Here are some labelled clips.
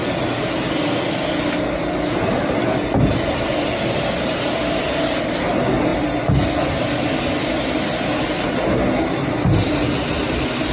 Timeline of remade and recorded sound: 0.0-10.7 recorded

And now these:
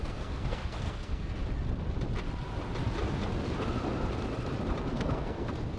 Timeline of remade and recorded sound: 0.0-1.4 remade; 1.4-4.9 recorded; 4.9-5.8 remade

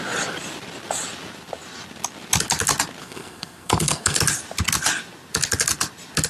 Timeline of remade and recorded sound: 0.0-3.0 recorded; 3.0-4.2 remade; 4.2-6.3 recorded